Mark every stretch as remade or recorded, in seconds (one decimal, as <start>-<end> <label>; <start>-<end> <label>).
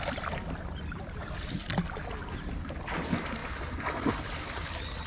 0.0-1.6 remade; 1.6-2.8 recorded; 2.8-3.4 remade; 3.4-4.1 recorded; 4.1-5.1 remade